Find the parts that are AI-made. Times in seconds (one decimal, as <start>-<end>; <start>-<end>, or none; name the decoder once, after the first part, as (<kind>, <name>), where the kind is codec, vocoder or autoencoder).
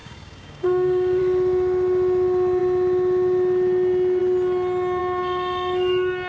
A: 0.0-1.2 (codec, DAC)